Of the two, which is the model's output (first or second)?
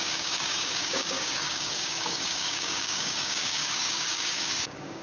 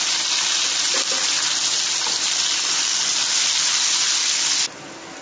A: first